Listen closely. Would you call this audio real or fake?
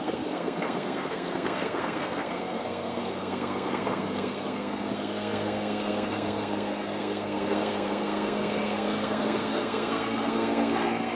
fake